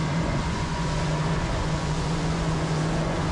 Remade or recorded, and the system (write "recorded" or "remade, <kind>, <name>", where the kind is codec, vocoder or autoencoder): remade, vocoder, Vocos